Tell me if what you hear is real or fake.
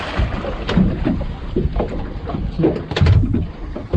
real